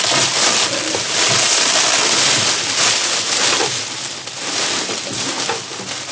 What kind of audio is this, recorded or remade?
recorded